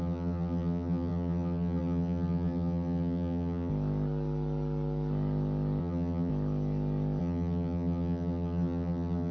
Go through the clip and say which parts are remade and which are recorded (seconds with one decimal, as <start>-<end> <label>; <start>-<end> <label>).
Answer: 0.0-3.7 remade; 3.7-5.8 recorded; 5.8-6.3 remade; 6.3-7.2 recorded; 7.2-9.3 remade